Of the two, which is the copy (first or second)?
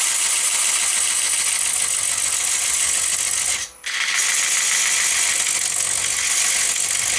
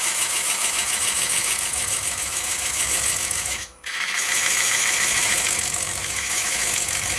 second